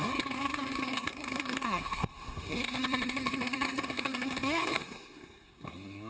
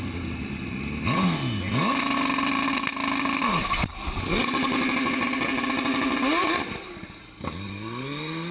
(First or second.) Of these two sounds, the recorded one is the second